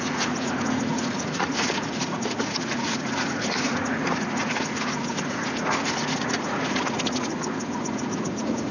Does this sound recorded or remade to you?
remade